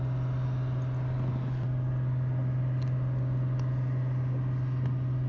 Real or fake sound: real